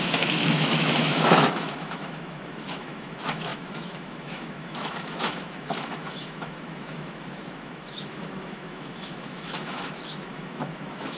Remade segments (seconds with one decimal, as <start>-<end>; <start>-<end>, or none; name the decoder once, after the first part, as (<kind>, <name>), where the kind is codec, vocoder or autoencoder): 0.0-11.2 (autoencoder, DAC-VAE)